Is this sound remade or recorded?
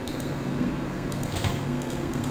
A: remade